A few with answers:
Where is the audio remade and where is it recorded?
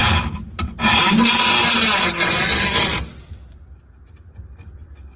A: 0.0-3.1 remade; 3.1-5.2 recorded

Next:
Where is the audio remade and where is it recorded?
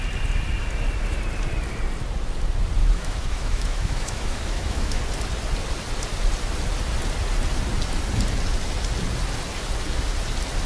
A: 0.0-2.8 recorded; 2.8-5.0 remade; 5.0-10.7 recorded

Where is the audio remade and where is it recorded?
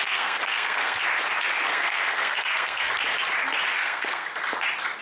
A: 0.0-1.0 remade; 1.0-1.7 recorded; 1.7-2.9 remade; 2.9-3.8 recorded; 3.8-4.3 remade; 4.3-5.0 recorded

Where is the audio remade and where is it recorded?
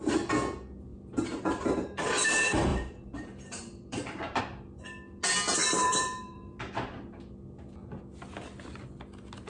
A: 0.0-2.7 recorded; 2.7-4.4 remade; 4.4-5.6 recorded; 5.6-6.6 remade; 6.6-9.5 recorded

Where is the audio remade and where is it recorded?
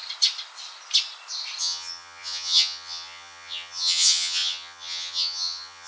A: 0.0-1.6 recorded; 1.6-5.9 remade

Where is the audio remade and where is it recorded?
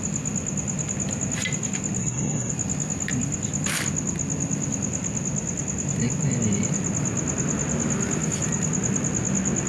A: 0.0-2.0 recorded; 2.0-2.5 remade; 2.5-9.7 recorded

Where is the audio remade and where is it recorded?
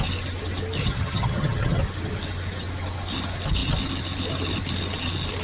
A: 0.0-0.8 recorded; 0.8-1.8 remade; 1.8-5.4 recorded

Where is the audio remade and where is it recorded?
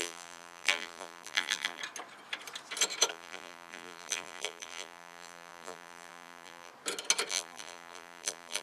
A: 0.0-1.8 remade; 1.8-3.1 recorded; 3.1-6.7 remade; 6.7-7.3 recorded; 7.3-8.6 remade